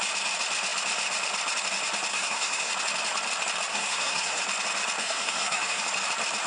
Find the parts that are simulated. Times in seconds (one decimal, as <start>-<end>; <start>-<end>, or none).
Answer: 2.1-2.7; 3.7-4.4; 5.0-5.8